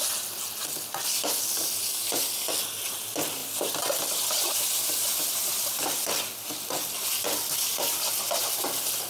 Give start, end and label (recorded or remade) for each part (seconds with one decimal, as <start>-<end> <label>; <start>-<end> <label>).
0.0-3.4 recorded; 3.4-6.5 remade; 6.5-7.7 recorded; 7.7-8.4 remade; 8.4-9.1 recorded